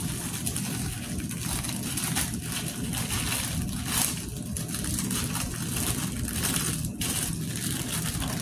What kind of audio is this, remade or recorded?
recorded